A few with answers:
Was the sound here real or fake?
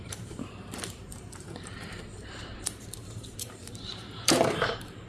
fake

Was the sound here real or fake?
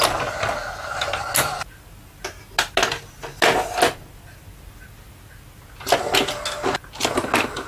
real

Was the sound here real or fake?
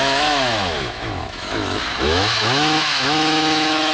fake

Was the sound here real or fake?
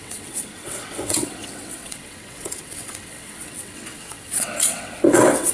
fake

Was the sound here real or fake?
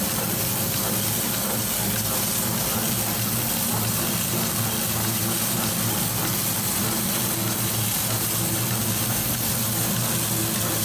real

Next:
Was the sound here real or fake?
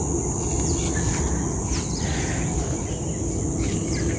real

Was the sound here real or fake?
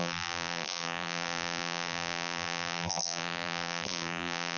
fake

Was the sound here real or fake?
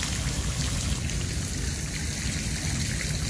real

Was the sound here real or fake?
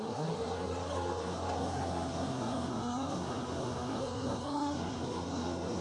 fake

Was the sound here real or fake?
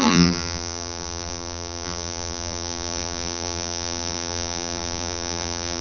fake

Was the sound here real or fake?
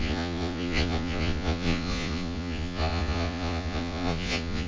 fake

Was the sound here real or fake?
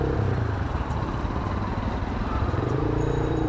fake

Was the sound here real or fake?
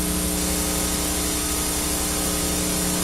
real